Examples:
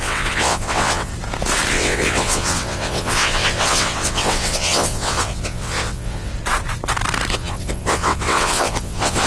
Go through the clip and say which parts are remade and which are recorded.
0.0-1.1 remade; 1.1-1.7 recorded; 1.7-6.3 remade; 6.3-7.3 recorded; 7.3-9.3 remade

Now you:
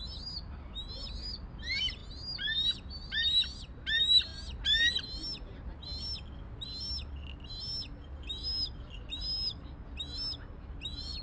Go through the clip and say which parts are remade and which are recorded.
0.0-11.2 recorded

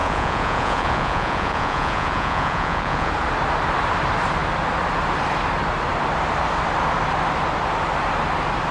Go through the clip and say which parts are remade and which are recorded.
0.0-3.1 remade; 3.1-8.7 recorded

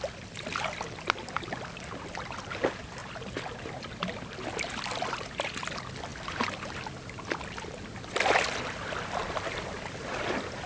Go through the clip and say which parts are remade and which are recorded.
0.0-10.7 recorded

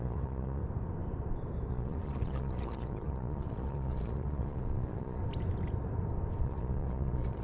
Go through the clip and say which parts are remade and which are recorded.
0.0-0.6 remade; 0.6-1.7 recorded; 1.7-5.2 remade; 5.2-6.4 recorded; 6.4-7.4 remade